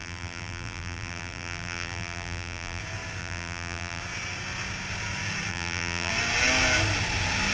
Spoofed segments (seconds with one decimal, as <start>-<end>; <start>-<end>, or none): 0.0-2.8; 3.2-4.0; 5.5-6.1